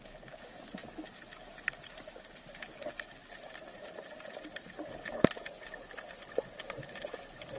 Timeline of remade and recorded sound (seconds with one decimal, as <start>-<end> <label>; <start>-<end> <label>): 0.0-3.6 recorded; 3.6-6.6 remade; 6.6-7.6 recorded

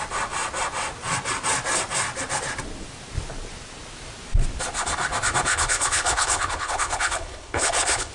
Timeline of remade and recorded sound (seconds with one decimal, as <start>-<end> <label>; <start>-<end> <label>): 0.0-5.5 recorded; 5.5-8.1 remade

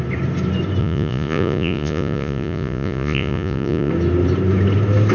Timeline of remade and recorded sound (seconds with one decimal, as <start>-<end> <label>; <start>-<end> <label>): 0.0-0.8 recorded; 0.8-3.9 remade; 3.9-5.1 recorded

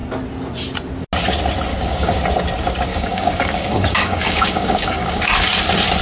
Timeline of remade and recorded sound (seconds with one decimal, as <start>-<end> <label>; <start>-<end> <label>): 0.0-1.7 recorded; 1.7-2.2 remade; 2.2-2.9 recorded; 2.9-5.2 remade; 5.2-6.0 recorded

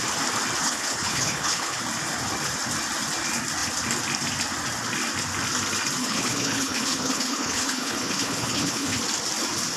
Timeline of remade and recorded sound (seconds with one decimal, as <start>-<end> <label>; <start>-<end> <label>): 0.0-0.6 recorded; 0.6-1.8 remade; 1.8-6.0 recorded; 6.0-9.0 remade; 9.0-9.8 recorded

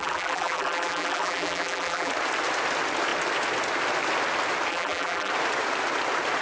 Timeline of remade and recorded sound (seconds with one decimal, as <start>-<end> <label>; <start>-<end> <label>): 0.0-2.1 remade; 2.1-4.7 recorded; 4.7-5.3 remade; 5.3-6.4 recorded

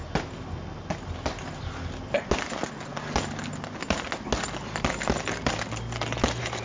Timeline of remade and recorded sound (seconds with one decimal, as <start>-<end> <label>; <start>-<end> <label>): 0.0-6.6 recorded